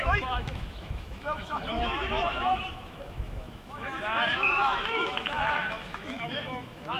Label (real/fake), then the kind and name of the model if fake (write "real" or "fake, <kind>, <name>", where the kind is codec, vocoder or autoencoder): fake, autoencoder, DAC-VAE